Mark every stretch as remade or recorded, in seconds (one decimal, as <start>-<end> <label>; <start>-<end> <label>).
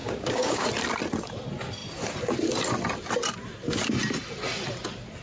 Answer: 0.0-0.7 remade; 0.7-5.2 recorded